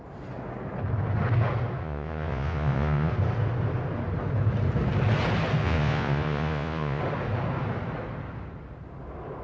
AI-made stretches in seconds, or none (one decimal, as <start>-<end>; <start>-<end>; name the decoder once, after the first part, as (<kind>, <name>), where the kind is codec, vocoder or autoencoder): 1.8-3.1 (vocoder, Vocos); 5.6-7.0